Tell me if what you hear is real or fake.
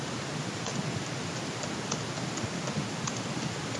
real